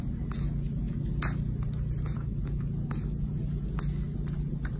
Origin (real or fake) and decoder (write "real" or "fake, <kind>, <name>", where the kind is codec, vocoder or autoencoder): real